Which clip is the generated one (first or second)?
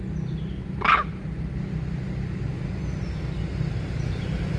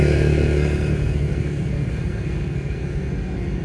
second